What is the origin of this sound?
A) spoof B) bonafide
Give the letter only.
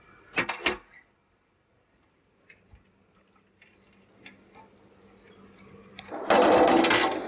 B